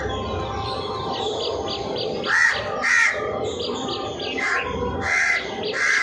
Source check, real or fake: real